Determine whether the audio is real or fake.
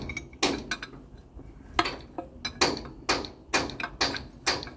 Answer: real